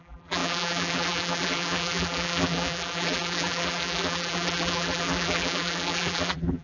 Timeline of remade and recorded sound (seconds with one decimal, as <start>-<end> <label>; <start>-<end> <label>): 0.0-6.6 remade